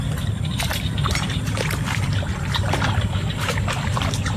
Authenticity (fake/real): fake